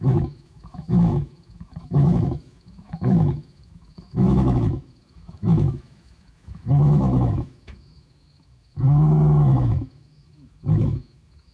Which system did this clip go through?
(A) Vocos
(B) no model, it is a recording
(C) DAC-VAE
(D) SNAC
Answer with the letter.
C